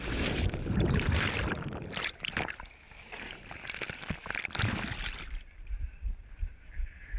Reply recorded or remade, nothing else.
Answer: remade